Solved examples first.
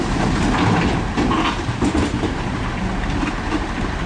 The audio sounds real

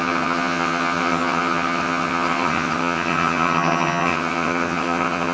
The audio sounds fake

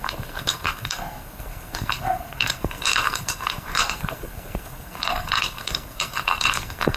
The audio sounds fake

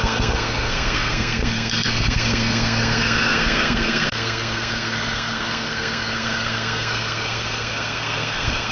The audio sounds fake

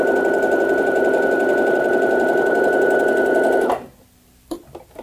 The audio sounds real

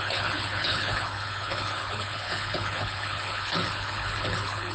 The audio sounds fake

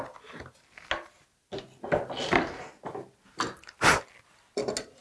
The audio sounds real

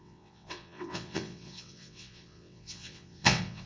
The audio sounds fake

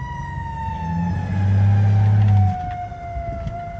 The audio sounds real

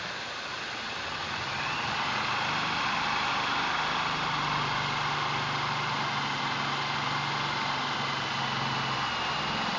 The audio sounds real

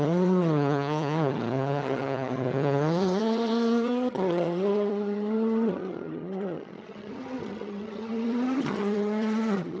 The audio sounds fake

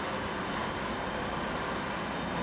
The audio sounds real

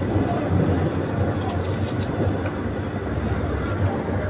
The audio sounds real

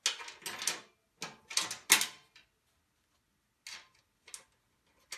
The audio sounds real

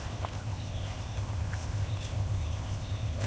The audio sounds fake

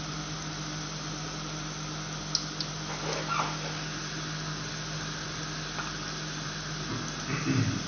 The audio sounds real